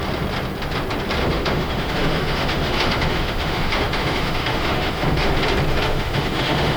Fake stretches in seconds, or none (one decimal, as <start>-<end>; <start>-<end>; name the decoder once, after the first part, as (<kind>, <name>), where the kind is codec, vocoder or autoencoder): 1.2-5.3 (autoencoder, DAC-VAE); 5.7-6.8